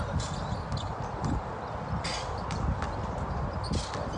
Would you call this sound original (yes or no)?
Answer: yes